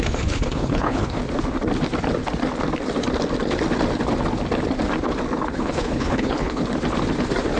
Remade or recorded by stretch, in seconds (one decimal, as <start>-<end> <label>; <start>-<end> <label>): 0.0-1.2 remade; 1.2-5.6 recorded; 5.6-6.6 remade; 6.6-7.6 recorded